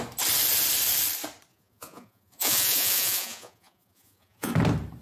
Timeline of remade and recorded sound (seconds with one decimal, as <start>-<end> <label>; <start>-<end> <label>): 0.0-1.5 recorded; 1.5-4.5 remade; 4.5-5.0 recorded